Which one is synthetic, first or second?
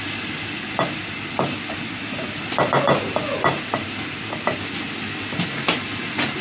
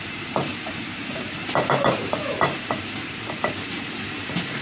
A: second